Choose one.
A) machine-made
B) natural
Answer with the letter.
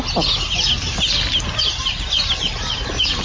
B